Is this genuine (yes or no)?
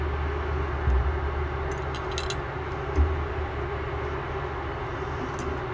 yes